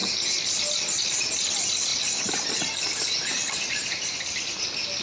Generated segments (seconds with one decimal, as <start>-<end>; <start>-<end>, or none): none